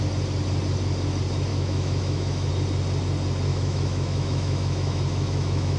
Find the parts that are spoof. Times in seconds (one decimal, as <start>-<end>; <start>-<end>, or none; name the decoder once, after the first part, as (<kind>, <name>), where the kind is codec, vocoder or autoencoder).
1.5-2.5 (autoencoder, DAC-VAE); 3.5-5.8